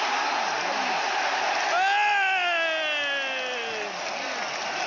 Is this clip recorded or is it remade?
recorded